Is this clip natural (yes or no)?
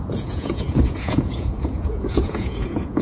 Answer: no